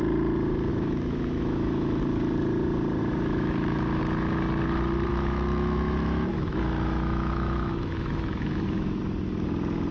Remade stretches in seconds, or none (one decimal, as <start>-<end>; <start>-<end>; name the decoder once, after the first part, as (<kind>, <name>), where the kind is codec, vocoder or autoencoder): 0.7-2.0 (autoencoder, DAC-VAE); 3.0-4.0; 5.1-9.0